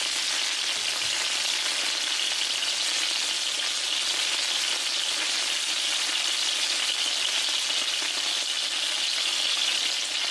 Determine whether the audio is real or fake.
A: real